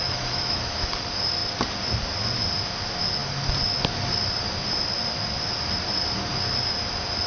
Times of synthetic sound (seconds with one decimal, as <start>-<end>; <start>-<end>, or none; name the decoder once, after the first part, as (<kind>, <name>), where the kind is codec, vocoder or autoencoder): 0.0-0.9 (autoencoder, DAC-VAE)